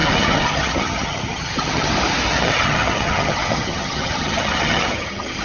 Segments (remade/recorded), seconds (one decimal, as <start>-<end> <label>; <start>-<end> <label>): 0.0-1.9 remade; 1.9-2.3 recorded; 2.3-5.4 remade

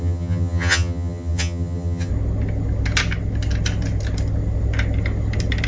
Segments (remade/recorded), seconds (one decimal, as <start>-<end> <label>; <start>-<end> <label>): 0.0-2.1 remade; 2.1-5.7 recorded

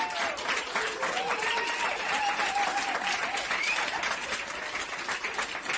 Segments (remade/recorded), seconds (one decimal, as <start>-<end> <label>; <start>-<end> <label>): 0.0-5.8 recorded